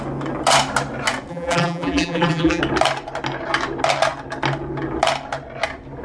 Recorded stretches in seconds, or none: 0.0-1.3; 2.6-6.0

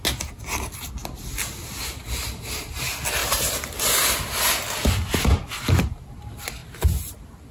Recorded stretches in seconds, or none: 0.0-3.2; 3.8-7.5